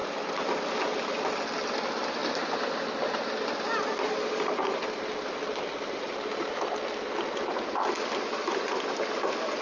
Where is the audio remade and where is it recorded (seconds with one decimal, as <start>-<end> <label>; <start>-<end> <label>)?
0.0-9.6 recorded